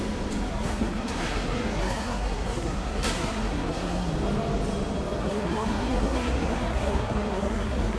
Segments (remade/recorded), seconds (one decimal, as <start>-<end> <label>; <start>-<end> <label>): 0.0-0.5 recorded; 0.5-4.1 remade; 4.1-5.2 recorded; 5.2-8.0 remade

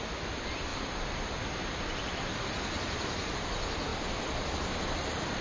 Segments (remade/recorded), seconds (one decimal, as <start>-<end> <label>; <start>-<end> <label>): 0.0-5.4 recorded

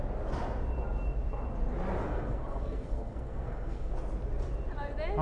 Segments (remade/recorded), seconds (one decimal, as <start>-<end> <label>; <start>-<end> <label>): 0.0-2.0 recorded; 2.0-3.9 remade; 3.9-5.2 recorded

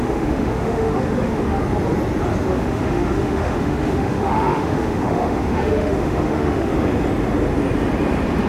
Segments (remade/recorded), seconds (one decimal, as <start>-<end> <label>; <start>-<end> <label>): 0.0-1.6 remade; 1.6-2.5 recorded; 2.5-6.7 remade; 6.7-8.5 recorded

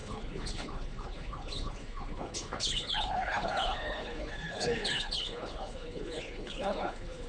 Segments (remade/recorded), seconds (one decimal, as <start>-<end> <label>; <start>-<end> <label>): 0.0-7.3 remade

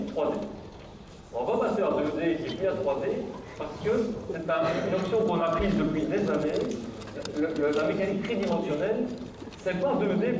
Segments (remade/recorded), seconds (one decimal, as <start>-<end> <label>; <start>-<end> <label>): 0.0-10.4 recorded

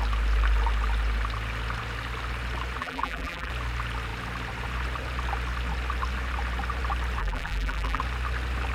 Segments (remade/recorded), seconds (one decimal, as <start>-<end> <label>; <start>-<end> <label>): 0.0-2.8 recorded; 2.8-3.5 remade; 3.5-7.2 recorded; 7.2-8.0 remade; 8.0-8.7 recorded

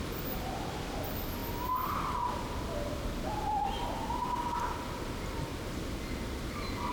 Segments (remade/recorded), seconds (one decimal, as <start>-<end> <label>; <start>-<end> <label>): 0.0-6.9 recorded